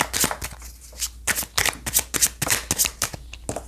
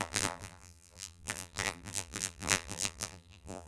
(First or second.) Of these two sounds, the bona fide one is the first